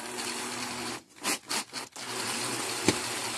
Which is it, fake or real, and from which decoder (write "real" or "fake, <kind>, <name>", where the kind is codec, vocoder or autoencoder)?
fake, vocoder, BigVGAN v2